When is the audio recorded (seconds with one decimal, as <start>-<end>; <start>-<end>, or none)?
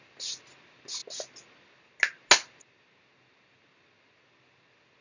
0.0-5.0